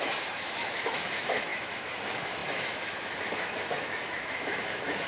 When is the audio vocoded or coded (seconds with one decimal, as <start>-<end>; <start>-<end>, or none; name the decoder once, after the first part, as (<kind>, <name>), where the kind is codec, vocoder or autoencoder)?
0.0-5.1 (autoencoder, DAC-VAE)